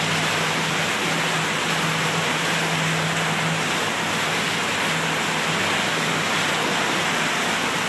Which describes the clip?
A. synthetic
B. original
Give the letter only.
B